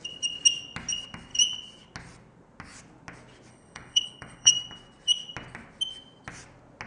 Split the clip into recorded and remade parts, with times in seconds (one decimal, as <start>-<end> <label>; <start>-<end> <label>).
0.0-3.5 recorded; 3.5-4.5 remade; 4.5-6.9 recorded